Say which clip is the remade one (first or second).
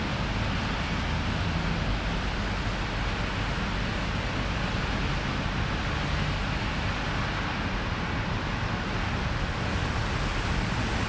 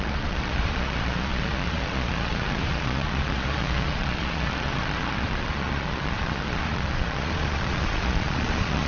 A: second